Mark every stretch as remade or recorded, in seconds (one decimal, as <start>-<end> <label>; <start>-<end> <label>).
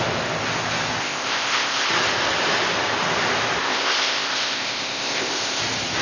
0.0-1.0 recorded; 1.0-1.9 remade; 1.9-3.6 recorded; 3.6-5.6 remade; 5.6-6.0 recorded